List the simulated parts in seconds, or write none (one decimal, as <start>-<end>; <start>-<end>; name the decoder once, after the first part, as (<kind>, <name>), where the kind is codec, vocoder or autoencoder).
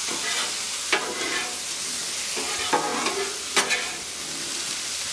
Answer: 1.3-2.0 (vocoder, BigVGAN v2)